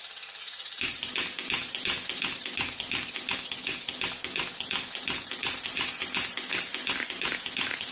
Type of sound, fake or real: real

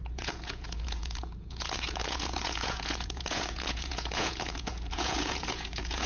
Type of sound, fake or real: fake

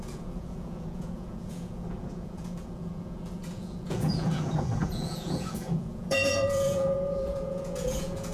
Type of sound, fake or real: fake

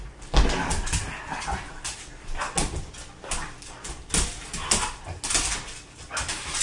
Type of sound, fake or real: real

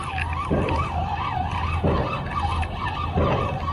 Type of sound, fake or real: real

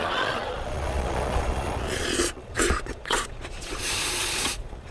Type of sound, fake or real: fake